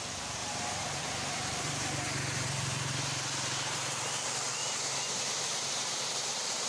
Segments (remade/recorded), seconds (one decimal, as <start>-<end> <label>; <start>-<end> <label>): 0.0-0.4 recorded; 0.4-3.9 remade; 3.9-4.6 recorded; 4.6-6.7 remade